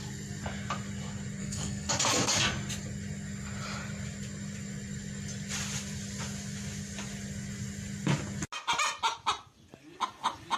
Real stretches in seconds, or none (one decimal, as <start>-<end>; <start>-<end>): 0.0-1.4; 1.9-10.6